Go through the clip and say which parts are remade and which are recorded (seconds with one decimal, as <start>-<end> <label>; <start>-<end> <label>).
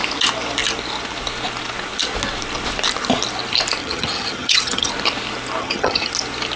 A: 0.0-3.8 recorded; 3.8-4.9 remade; 4.9-5.6 recorded; 5.6-6.1 remade; 6.1-6.6 recorded